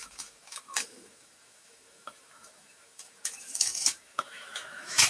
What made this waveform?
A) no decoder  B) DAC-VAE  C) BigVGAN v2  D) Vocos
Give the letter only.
B